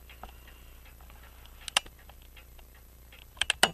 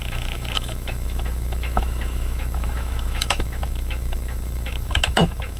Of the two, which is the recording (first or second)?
first